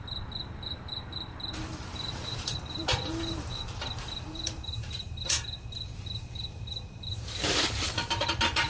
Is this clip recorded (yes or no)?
no